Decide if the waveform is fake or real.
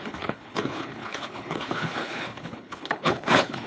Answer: fake